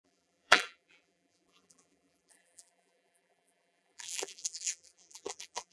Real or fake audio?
fake